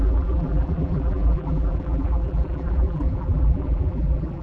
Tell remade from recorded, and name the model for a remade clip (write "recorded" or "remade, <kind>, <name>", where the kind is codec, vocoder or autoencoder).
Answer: remade, vocoder, BigVGAN v2